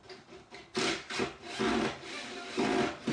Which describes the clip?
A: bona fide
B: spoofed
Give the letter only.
A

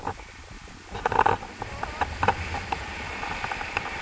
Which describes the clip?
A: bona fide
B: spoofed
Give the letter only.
A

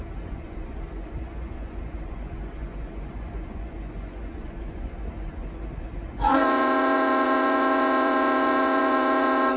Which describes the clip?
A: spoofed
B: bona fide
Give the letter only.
A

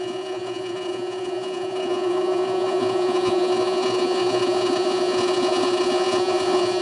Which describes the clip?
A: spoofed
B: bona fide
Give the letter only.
A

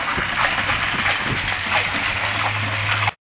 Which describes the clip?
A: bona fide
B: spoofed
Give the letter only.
A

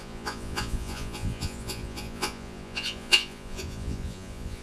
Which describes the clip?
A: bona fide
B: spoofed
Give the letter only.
B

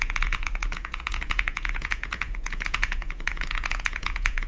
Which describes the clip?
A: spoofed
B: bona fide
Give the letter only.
A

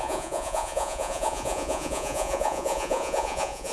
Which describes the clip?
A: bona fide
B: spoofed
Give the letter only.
B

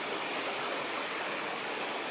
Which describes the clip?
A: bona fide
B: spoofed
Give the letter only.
A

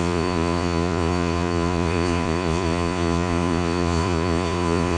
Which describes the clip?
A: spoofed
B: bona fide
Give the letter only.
A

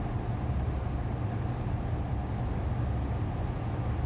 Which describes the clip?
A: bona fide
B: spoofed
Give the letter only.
A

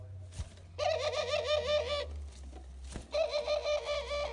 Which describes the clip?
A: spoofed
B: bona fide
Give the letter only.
B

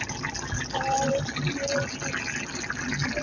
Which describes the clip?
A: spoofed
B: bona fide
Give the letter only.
B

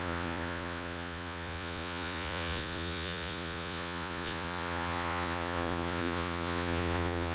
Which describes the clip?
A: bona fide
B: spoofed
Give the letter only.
B